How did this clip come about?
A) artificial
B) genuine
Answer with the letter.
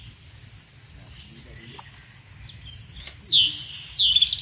B